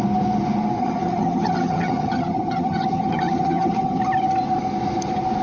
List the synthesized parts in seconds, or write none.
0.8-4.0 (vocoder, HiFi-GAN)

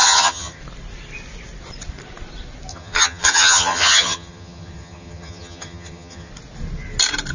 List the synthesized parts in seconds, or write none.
0.0-0.6 (vocoder, HiFi-GAN); 2.7-6.3

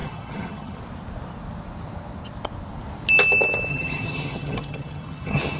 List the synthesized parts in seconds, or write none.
0.0-0.8 (vocoder, HiFi-GAN); 3.7-5.6

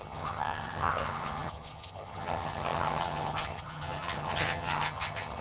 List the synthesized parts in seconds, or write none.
0.0-5.4 (vocoder, HiFi-GAN)

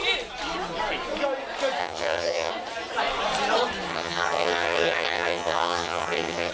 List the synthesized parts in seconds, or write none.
1.8-2.5 (vocoder, HiFi-GAN); 3.9-6.5

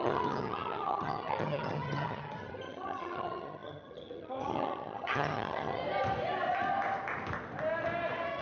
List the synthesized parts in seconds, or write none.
0.0-5.8 (vocoder, HiFi-GAN)

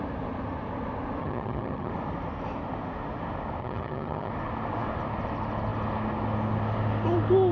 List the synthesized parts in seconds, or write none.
1.2-1.9 (vocoder, HiFi-GAN); 3.6-4.3